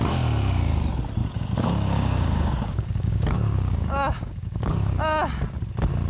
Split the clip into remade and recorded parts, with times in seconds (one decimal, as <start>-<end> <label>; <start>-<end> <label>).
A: 0.0-1.2 recorded; 1.2-4.9 remade; 4.9-6.1 recorded